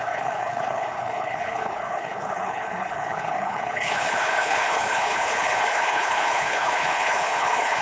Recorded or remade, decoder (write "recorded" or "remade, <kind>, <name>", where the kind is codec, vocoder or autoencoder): remade, codec, HILCodec